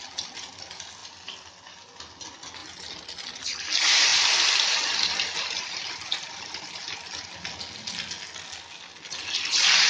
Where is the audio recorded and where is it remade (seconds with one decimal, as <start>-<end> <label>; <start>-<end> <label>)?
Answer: 0.0-9.9 recorded